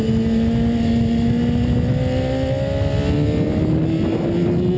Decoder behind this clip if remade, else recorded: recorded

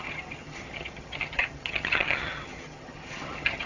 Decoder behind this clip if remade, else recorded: remade, vocoder, HiFi-GAN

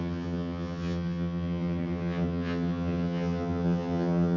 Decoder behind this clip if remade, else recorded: remade, vocoder, HiFi-GAN